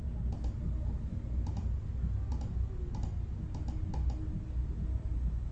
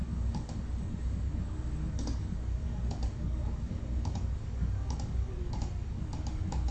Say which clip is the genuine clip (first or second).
first